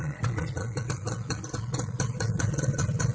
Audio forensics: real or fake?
fake